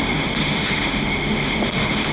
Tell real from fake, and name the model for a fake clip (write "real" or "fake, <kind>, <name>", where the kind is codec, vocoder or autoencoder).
fake, autoencoder, DAC-VAE